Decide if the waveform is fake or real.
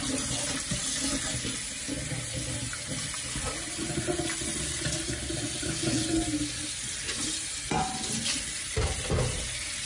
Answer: real